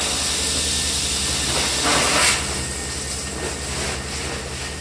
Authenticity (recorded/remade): recorded